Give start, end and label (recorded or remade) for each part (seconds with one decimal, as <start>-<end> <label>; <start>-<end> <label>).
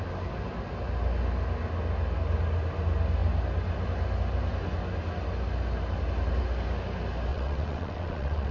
0.0-7.3 recorded; 7.3-8.5 remade